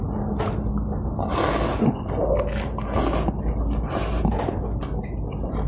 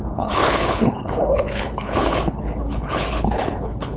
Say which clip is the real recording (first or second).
first